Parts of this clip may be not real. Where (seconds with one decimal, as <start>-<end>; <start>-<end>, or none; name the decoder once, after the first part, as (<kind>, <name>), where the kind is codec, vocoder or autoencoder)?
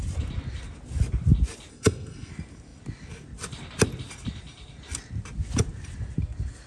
1.7-2.3 (codec, SNAC)